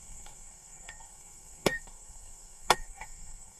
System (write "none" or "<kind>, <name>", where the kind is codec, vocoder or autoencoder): codec, SNAC